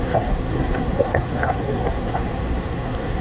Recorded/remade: remade